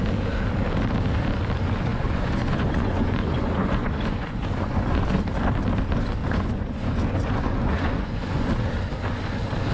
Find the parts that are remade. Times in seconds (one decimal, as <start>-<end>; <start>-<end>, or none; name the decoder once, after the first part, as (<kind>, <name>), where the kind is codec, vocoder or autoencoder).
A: 1.9-5.2 (vocoder, Vocos); 6.2-8.5